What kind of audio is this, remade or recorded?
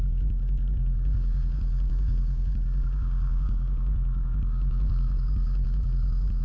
remade